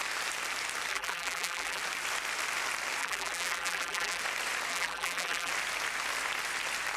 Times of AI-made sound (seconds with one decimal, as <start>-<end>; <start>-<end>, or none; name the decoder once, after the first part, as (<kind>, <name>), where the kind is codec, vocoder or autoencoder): 0.9-1.8 (vocoder, BigVGAN v2); 3.0-4.2; 4.7-5.5